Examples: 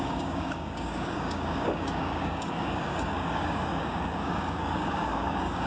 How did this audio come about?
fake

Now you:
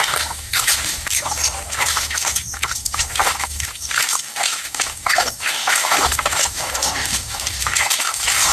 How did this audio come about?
fake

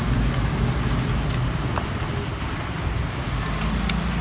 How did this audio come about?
real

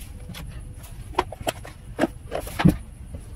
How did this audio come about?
real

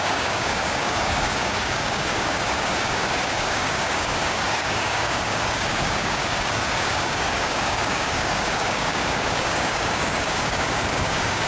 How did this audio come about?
fake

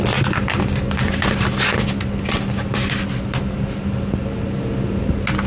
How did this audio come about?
real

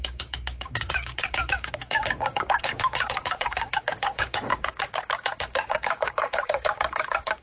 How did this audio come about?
fake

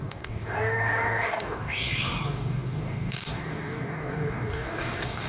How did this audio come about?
fake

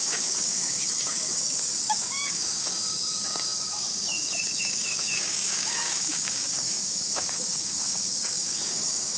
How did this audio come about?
fake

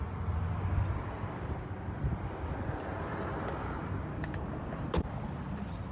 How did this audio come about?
real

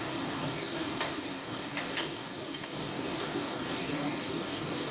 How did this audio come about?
fake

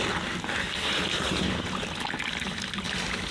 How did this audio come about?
real